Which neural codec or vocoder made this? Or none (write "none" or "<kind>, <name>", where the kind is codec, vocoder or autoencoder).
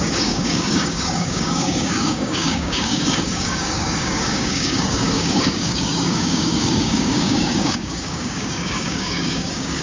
codec, DAC